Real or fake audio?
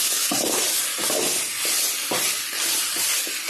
real